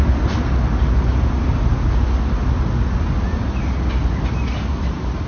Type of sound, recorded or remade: recorded